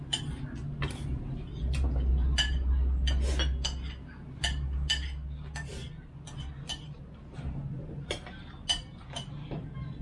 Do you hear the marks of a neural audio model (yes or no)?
no